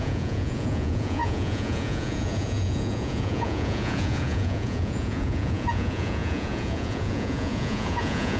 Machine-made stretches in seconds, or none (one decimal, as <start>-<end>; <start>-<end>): 0.0-8.4